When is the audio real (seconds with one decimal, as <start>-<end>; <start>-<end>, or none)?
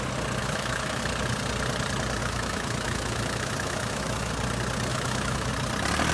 0.0-0.4; 1.0-2.2; 4.3-4.9; 5.5-6.1